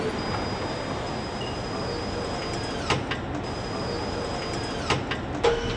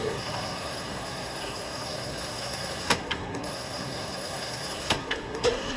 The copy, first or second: second